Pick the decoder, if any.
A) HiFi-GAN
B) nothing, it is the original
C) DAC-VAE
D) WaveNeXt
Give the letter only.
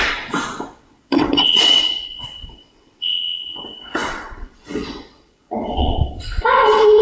D